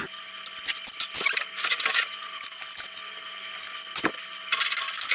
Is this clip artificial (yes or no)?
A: yes